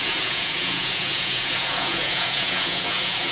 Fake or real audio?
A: fake